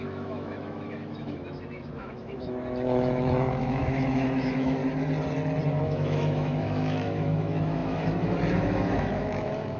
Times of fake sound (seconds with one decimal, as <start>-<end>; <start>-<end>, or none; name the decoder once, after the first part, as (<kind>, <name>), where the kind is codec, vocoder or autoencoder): 0.0-4.8 (autoencoder, DAC-VAE); 5.8-9.8